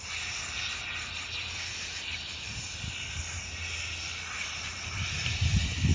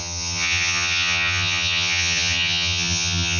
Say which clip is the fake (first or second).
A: second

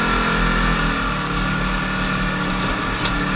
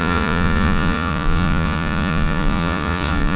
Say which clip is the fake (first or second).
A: second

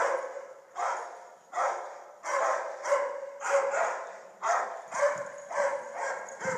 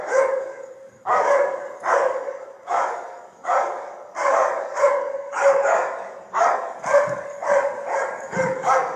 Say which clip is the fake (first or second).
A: second